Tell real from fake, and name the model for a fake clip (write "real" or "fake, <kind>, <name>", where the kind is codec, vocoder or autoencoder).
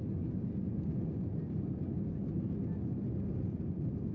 real